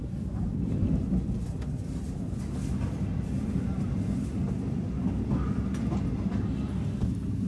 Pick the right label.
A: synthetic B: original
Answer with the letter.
B